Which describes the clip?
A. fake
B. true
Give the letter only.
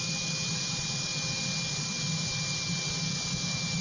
B